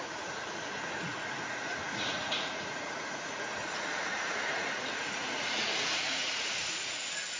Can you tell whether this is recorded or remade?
remade